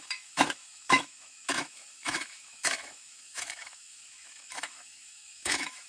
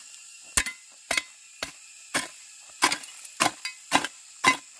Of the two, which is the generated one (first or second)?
first